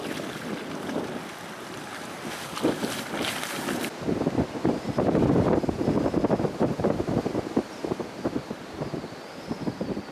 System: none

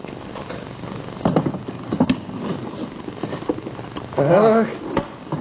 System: none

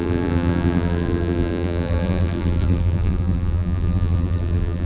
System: vocoder, BigVGAN v2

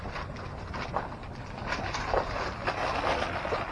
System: none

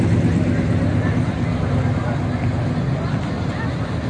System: none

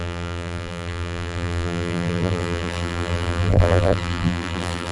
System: vocoder, BigVGAN v2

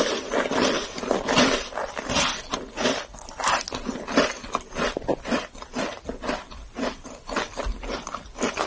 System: none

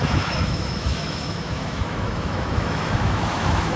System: autoencoder, DAC-VAE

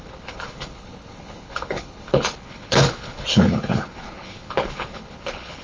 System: codec, HILCodec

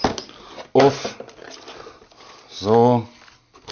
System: none